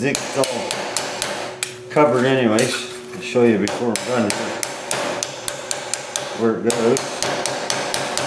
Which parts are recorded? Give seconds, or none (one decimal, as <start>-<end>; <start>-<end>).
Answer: 0.0-8.3

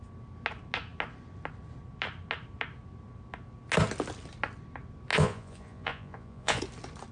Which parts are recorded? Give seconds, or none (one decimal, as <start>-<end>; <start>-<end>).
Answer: 0.0-5.1; 6.6-7.1